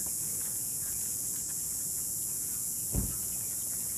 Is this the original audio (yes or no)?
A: no